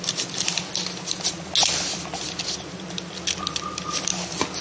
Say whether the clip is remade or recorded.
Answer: recorded